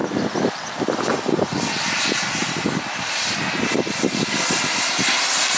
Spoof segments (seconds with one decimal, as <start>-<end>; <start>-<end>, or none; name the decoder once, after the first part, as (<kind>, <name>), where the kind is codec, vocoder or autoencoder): none